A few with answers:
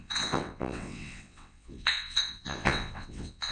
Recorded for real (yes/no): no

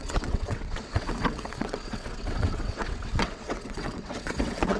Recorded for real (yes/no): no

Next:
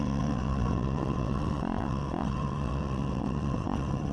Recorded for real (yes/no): no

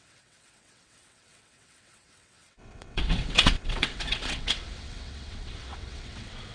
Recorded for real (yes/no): no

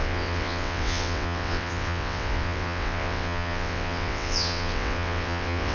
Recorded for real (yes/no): no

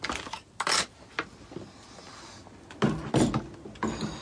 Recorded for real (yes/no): yes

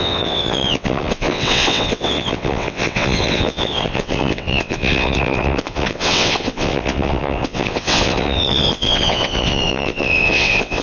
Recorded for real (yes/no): no